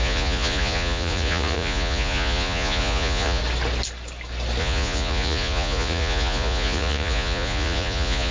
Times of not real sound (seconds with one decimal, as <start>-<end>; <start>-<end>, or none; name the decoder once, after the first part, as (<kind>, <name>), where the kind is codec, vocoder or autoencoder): 0.0-3.4 (vocoder, Vocos); 4.6-8.3